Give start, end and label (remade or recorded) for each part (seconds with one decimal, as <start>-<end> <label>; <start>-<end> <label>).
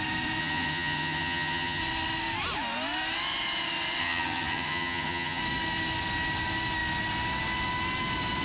0.0-0.4 recorded; 0.4-1.8 remade; 1.8-4.0 recorded; 4.0-5.4 remade; 5.4-8.4 recorded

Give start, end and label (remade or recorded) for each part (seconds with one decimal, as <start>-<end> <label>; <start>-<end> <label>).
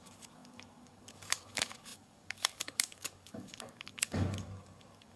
0.0-5.2 remade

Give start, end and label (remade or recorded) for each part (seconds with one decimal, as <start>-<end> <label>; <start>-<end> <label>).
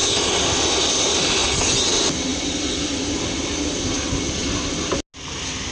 0.0-5.7 recorded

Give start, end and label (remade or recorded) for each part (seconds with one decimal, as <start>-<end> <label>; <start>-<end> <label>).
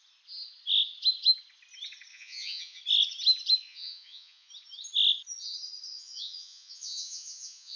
0.0-2.1 recorded; 2.1-2.8 remade; 2.8-3.6 recorded; 3.6-4.5 remade; 4.5-5.9 recorded; 5.9-7.8 remade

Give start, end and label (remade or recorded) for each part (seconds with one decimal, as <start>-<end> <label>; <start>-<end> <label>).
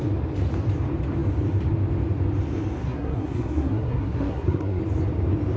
0.0-2.8 recorded; 2.8-4.8 remade; 4.8-5.6 recorded